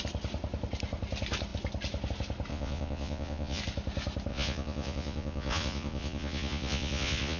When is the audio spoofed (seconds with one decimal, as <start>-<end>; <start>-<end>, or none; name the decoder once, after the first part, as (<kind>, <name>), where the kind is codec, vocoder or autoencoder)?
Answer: 2.5-3.6 (vocoder, Vocos); 4.3-7.4